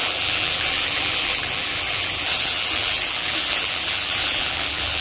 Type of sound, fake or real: fake